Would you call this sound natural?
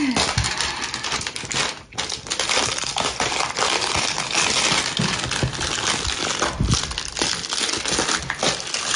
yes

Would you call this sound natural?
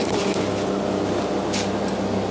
yes